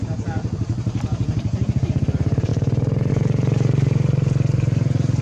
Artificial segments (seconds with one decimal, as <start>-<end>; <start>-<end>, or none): 0.0-2.5; 3.1-5.2